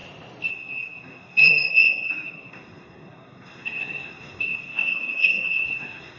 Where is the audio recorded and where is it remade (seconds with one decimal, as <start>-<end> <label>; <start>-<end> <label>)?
0.0-0.5 recorded; 0.5-6.2 remade